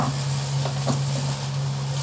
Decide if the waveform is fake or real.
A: real